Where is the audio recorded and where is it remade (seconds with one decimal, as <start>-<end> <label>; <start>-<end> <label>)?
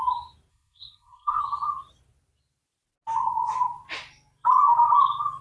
0.0-0.5 recorded; 0.5-1.4 remade; 1.4-5.4 recorded